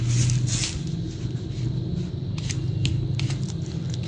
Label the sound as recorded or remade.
recorded